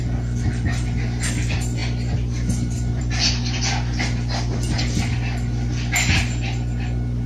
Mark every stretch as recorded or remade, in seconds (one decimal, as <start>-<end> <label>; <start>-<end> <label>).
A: 0.0-7.3 recorded